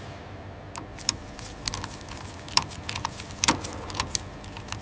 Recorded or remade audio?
recorded